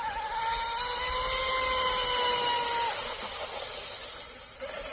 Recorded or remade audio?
recorded